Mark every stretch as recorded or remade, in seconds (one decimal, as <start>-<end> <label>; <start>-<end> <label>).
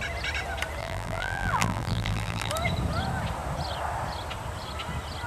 0.0-0.8 recorded; 0.8-2.5 remade; 2.5-5.3 recorded